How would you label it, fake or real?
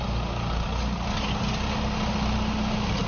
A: real